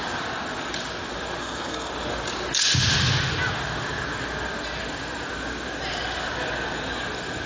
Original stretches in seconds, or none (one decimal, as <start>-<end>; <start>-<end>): 0.0-1.4; 1.9-7.5